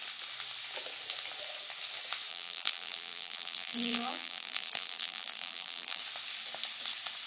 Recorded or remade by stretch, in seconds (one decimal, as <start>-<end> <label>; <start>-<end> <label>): 0.0-2.3 recorded; 2.3-6.0 remade; 6.0-7.3 recorded